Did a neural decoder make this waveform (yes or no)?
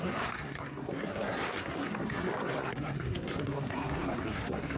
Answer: yes